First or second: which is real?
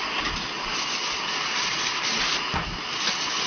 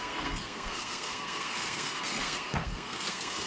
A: first